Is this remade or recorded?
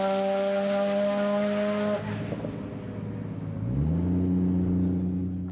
recorded